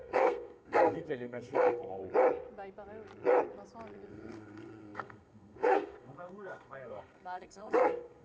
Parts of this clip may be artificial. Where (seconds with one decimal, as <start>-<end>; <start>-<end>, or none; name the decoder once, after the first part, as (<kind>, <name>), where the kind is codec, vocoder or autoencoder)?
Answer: 0.0-2.0 (codec, SNAC); 4.1-8.2

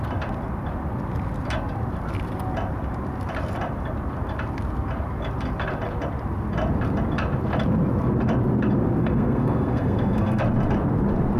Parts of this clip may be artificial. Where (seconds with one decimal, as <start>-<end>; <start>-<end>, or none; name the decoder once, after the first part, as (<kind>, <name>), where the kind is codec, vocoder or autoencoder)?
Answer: 9.0-10.4 (codec, SNAC)

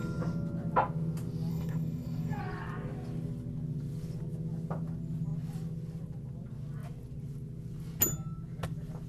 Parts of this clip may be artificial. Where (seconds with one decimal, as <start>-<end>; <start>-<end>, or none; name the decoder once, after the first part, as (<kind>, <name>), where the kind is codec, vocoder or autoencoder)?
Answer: 1.5-2.4 (codec, SNAC)